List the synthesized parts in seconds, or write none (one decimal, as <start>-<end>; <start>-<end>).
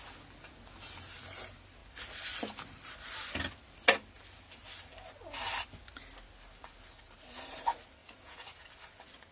8.0-8.6